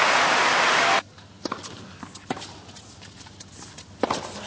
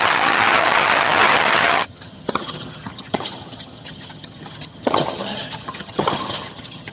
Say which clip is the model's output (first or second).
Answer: second